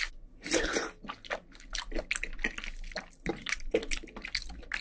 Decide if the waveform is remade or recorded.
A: recorded